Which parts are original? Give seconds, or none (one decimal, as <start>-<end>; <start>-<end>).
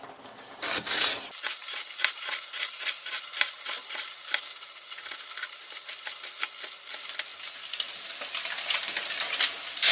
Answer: 0.0-9.9